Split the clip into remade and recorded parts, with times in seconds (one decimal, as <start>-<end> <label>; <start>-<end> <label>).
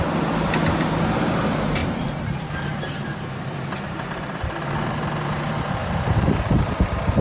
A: 0.0-5.8 recorded; 5.8-6.4 remade; 6.4-7.2 recorded